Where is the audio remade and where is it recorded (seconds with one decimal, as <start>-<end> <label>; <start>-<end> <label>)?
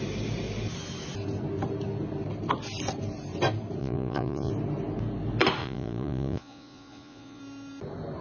0.0-3.8 recorded; 3.8-4.5 remade; 4.5-5.6 recorded; 5.6-7.4 remade; 7.4-8.2 recorded